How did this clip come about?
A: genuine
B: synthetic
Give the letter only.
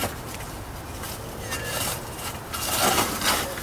A